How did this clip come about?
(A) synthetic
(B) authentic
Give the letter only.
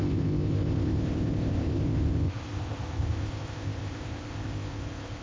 A